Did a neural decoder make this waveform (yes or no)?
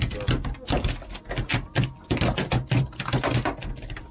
no